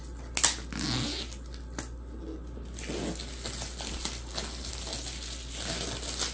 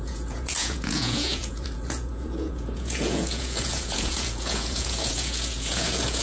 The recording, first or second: first